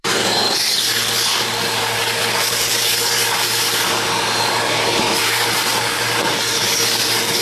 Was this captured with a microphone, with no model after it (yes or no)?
no